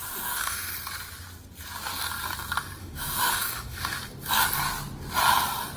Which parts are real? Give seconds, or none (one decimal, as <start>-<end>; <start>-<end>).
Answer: 0.7-2.8; 4.0-5.8